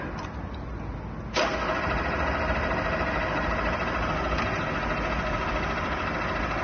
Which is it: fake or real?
real